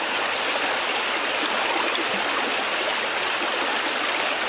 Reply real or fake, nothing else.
real